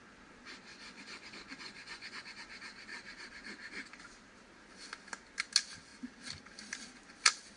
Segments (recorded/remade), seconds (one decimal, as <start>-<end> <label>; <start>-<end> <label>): 0.0-0.7 recorded; 0.7-2.4 remade; 2.4-7.6 recorded